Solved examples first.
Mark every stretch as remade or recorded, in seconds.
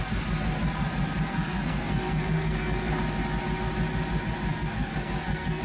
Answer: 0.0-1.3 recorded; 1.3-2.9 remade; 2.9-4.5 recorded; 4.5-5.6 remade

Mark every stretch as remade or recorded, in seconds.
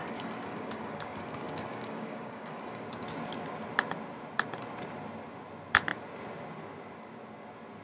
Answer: 0.0-2.9 remade; 2.9-7.8 recorded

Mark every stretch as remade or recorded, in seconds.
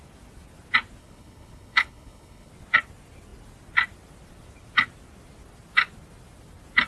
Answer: 0.0-1.0 recorded; 1.0-2.5 remade; 2.5-6.9 recorded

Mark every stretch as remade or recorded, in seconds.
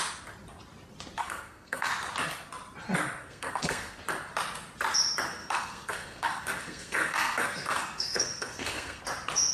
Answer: 0.0-1.2 recorded; 1.2-1.9 remade; 1.9-3.2 recorded; 3.2-4.0 remade; 4.0-5.4 recorded; 5.4-9.0 remade; 9.0-9.5 recorded